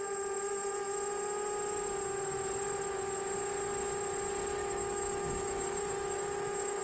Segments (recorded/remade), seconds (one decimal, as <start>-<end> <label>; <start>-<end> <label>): 0.0-4.6 recorded; 4.6-6.8 remade